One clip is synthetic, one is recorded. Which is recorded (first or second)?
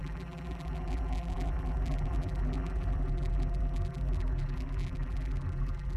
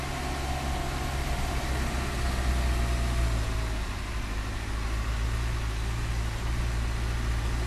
second